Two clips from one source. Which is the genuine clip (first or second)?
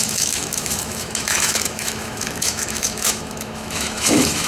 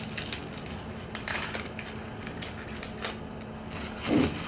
second